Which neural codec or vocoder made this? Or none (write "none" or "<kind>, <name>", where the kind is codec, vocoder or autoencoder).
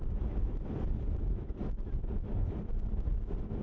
none